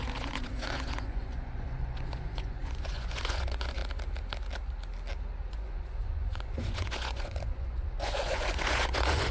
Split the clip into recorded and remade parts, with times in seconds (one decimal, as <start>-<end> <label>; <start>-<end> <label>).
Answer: 0.0-3.8 remade; 3.8-5.5 recorded; 5.5-9.3 remade